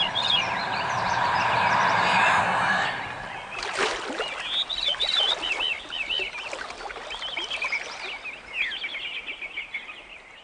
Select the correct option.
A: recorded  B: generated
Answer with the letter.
A